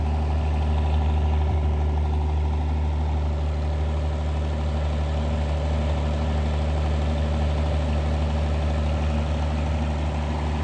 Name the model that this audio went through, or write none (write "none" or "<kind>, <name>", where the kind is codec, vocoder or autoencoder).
none